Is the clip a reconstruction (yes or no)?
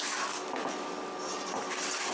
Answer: no